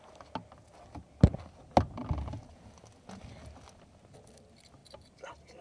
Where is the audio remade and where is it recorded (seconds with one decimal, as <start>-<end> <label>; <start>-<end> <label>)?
0.0-5.6 recorded